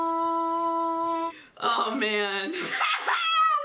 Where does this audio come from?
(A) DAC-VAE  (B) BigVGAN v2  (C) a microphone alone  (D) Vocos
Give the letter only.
A